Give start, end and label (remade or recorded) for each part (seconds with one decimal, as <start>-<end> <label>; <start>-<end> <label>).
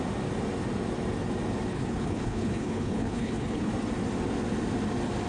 0.0-1.7 recorded; 1.7-3.7 remade; 3.7-5.3 recorded